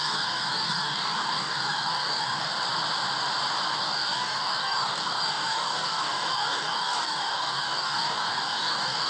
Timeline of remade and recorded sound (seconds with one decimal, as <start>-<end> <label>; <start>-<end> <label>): 0.0-2.5 remade; 2.5-3.8 recorded; 3.8-9.1 remade